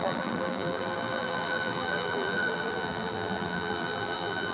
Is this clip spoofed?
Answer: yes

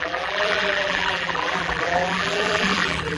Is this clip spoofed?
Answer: yes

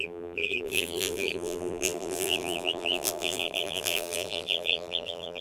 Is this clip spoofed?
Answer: yes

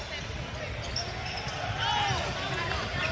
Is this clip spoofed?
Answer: no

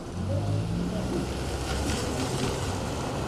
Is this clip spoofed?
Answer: no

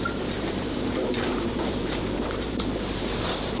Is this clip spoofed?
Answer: yes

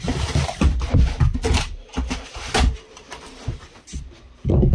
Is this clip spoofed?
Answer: yes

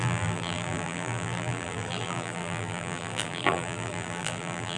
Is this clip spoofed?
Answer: yes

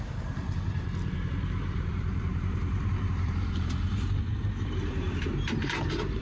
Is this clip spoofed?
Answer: yes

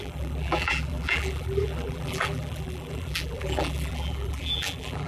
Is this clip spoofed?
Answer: yes